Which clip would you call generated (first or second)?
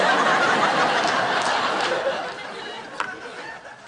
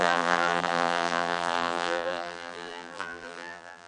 second